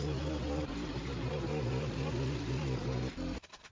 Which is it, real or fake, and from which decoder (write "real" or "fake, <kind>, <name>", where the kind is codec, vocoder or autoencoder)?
real